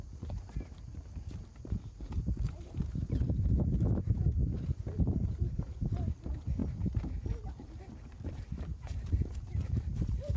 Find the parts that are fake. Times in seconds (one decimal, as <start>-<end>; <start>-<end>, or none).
0.0-6.6; 7.2-10.4